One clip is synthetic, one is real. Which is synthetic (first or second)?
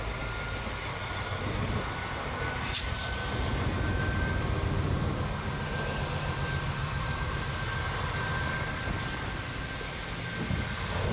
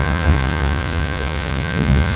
second